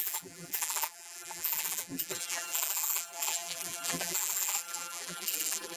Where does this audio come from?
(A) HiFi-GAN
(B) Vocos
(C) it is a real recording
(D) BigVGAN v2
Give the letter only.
D